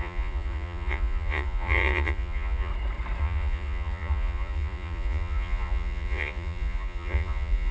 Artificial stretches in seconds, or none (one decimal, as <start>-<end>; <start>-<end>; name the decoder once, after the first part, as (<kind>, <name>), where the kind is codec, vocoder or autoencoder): 0.0-2.7 (vocoder, Vocos); 3.2-7.7